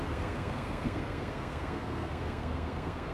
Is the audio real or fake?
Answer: fake